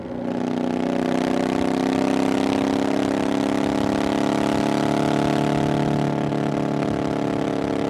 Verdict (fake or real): real